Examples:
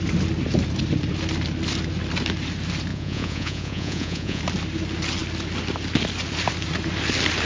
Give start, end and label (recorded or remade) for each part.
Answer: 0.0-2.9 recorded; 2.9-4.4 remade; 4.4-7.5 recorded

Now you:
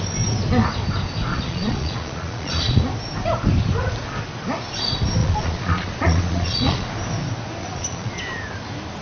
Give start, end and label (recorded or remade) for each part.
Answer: 0.0-1.3 recorded; 1.3-2.8 remade; 2.8-5.2 recorded; 5.2-6.9 remade; 6.9-7.6 recorded; 7.6-8.2 remade; 8.2-9.0 recorded

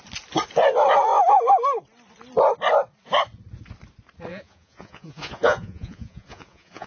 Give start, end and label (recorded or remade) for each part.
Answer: 0.0-4.3 recorded; 4.3-6.9 remade

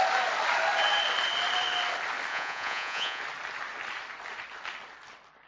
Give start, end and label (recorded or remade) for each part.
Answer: 0.0-2.3 recorded; 2.3-3.2 remade; 3.2-5.5 recorded